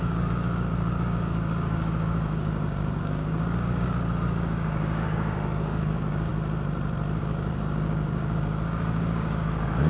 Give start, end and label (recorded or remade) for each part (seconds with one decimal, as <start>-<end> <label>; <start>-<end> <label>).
0.0-6.3 remade; 6.3-7.2 recorded; 7.2-9.9 remade